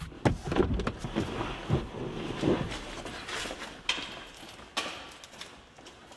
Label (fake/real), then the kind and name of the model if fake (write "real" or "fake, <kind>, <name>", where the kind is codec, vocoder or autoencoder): real